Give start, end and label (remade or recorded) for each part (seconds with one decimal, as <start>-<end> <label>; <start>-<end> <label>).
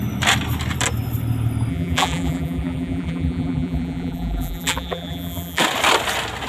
0.0-1.7 recorded; 1.7-5.6 remade; 5.6-6.5 recorded